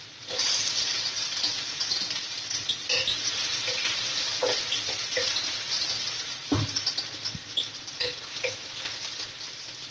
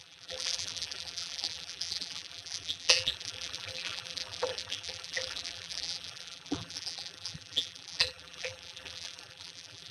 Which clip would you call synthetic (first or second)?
second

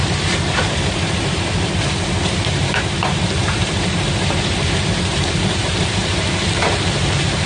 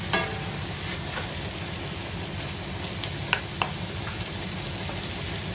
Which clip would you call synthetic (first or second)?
first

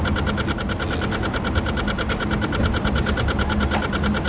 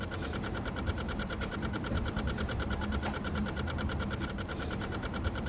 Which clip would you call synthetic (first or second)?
second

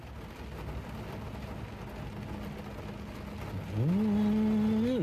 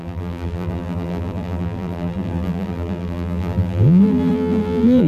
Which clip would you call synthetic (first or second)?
second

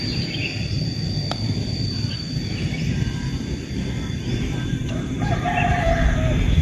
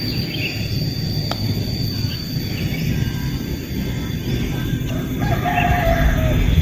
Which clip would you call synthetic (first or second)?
first